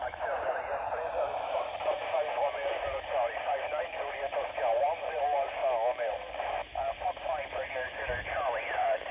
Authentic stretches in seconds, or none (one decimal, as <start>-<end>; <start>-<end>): 5.6-6.4